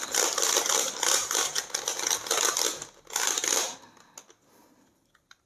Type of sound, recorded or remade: recorded